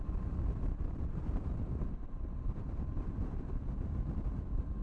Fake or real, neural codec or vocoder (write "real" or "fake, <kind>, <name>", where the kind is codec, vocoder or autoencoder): fake, vocoder, BigVGAN v2